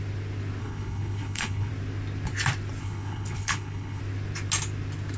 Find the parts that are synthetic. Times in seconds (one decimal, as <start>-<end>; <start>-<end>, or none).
0.6-1.7; 2.8-4.0